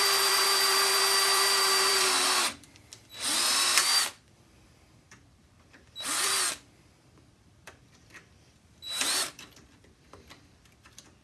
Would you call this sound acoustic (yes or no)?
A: no